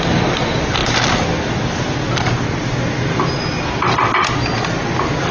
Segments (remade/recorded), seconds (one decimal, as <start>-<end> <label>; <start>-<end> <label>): 0.0-5.3 recorded